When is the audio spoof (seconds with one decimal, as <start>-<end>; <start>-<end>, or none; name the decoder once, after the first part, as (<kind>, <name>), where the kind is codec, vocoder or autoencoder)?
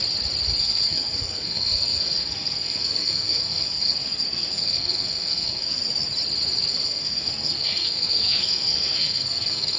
0.6-5.8 (codec, SNAC); 6.7-9.8